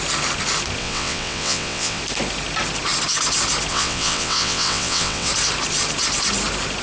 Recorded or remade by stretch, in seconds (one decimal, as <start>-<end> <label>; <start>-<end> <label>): 0.0-0.8 recorded; 0.8-2.0 remade; 2.0-3.7 recorded; 3.7-5.3 remade; 5.3-6.8 recorded